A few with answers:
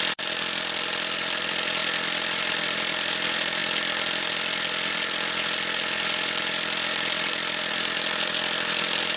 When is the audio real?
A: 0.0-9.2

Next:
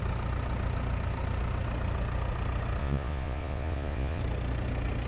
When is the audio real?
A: 0.0-2.8; 4.2-5.1

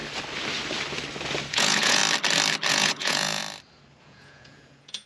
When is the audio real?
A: 0.0-1.5; 2.0-2.7; 3.4-4.0

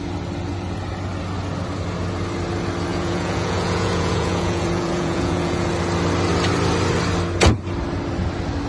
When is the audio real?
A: 0.0-2.9; 5.7-8.7

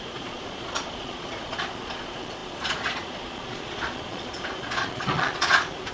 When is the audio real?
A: none

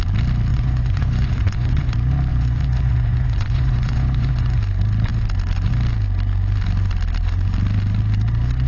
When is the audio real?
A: 0.0-0.5; 1.9-2.3; 4.6-8.7